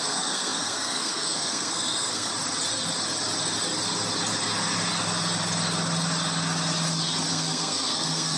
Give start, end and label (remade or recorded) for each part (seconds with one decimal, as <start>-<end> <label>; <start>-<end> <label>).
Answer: 0.0-2.3 remade; 2.3-7.3 recorded; 7.3-8.4 remade